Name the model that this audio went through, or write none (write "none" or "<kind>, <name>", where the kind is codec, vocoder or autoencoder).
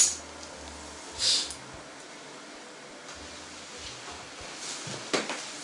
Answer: none